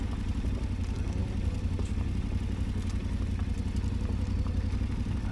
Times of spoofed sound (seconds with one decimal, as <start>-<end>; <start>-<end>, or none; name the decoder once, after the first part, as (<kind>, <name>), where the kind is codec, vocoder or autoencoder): 1.2-1.9 (vocoder, BigVGAN v2)